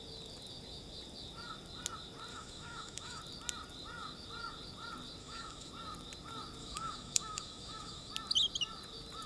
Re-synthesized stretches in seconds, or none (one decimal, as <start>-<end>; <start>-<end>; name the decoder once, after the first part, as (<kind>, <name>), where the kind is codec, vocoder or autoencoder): 2.3-3.2 (autoencoder, DAC-VAE); 5.2-5.7; 6.6-8.1